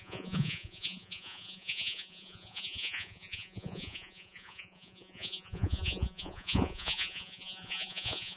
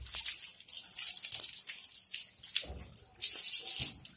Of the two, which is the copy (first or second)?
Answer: first